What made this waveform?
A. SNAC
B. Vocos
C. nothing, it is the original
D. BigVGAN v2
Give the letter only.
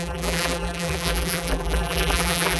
D